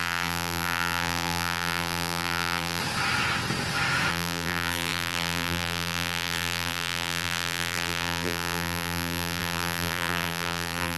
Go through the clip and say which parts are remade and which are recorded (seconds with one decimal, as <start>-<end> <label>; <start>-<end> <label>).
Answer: 0.0-2.8 remade; 2.8-4.1 recorded; 4.1-11.0 remade